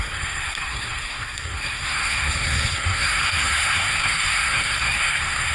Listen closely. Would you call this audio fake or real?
fake